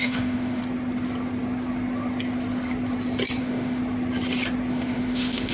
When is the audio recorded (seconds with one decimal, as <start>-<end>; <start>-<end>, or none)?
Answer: 0.6-3.4; 3.8-4.7